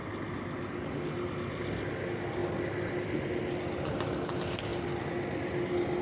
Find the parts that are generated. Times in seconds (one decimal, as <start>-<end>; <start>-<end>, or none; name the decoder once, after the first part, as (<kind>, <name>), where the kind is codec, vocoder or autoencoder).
none

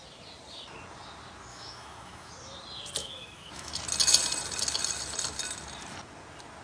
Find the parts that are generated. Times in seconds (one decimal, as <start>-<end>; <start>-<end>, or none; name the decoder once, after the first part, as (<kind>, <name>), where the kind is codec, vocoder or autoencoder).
1.5-2.3 (autoencoder, DAC-VAE); 3.0-3.7

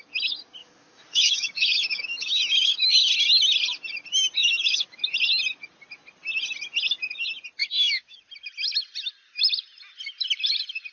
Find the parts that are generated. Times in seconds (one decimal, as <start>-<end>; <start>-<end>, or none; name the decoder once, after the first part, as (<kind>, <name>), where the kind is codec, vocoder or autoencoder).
0.6-3.1 (autoencoder, DAC-VAE); 4.4-5.0; 7.6-8.2

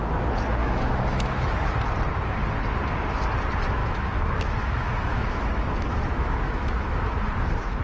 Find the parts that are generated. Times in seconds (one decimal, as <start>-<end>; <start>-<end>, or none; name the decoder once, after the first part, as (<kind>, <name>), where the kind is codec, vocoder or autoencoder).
0.6-1.8 (autoencoder, DAC-VAE); 3.8-7.8